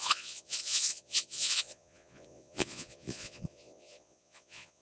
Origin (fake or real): fake